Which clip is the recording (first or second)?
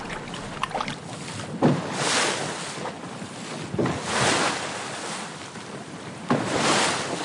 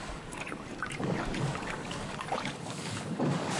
first